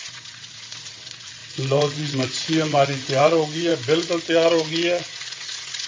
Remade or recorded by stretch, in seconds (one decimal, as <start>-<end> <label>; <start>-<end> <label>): 0.0-3.7 remade; 3.7-4.2 recorded; 4.2-5.9 remade